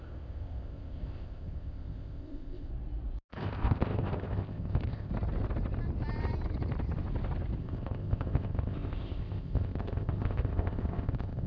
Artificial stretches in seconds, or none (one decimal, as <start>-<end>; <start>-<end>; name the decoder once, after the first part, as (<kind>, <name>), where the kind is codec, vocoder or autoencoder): 0.0-2.7 (codec, ZipCodec); 3.3-5.1; 7.6-11.5